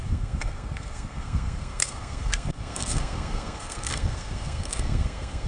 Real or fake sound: fake